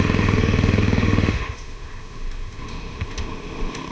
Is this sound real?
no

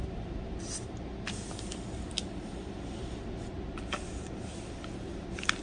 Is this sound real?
yes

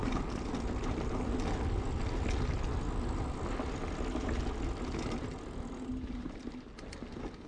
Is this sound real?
yes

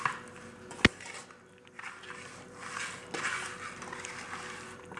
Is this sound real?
yes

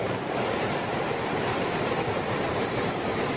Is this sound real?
no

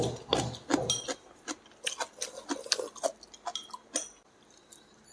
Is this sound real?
yes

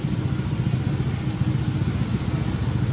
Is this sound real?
yes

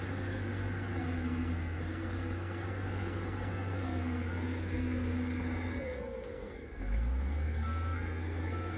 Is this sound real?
no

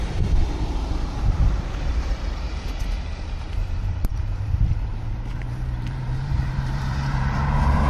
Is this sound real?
no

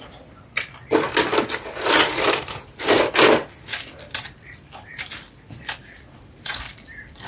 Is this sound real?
yes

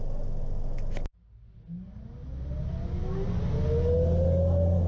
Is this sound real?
yes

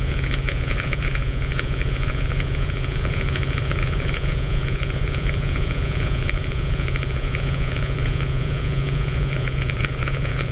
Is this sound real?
no